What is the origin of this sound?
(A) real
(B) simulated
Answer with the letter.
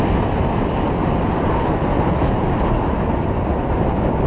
A